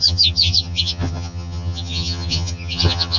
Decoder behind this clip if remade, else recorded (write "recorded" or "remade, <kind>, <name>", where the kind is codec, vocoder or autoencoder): remade, vocoder, HiFi-GAN